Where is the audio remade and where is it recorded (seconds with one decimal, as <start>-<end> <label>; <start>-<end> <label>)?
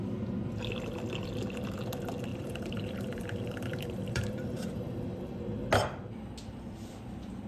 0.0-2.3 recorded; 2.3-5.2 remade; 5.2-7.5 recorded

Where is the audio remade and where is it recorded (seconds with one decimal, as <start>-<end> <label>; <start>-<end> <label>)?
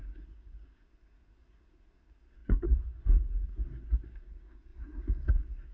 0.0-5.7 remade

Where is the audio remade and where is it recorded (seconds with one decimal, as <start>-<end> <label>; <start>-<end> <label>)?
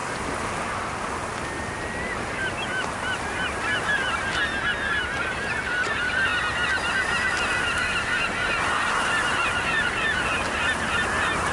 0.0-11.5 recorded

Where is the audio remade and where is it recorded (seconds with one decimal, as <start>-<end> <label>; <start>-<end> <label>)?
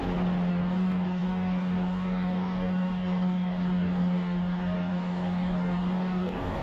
0.0-0.5 recorded; 0.5-6.6 remade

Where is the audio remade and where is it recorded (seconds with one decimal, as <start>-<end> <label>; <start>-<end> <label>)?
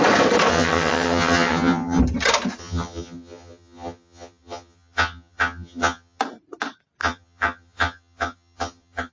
0.0-0.5 recorded; 0.5-2.0 remade; 2.0-2.6 recorded; 2.6-6.2 remade; 6.2-7.0 recorded; 7.0-9.1 remade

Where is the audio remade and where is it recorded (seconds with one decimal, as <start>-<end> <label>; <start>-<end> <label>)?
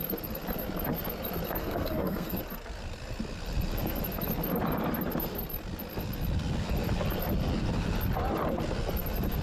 0.0-1.6 recorded; 1.6-2.4 remade; 2.4-9.4 recorded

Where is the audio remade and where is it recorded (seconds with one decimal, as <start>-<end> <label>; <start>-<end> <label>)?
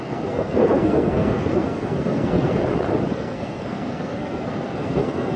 0.0-2.6 remade; 2.6-3.1 recorded; 3.1-5.4 remade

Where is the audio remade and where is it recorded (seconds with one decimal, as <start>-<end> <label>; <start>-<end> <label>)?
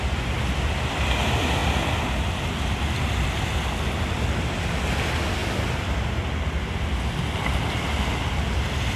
0.0-9.0 recorded